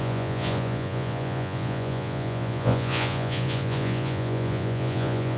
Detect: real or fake fake